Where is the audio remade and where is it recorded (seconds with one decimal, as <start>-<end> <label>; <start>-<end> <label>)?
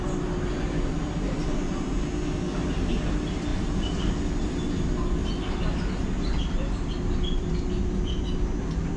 0.0-3.5 recorded; 3.5-4.2 remade; 4.2-5.2 recorded; 5.2-5.8 remade; 5.8-9.0 recorded